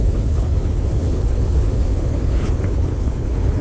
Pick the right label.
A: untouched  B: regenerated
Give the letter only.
B